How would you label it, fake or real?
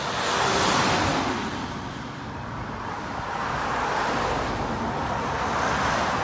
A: real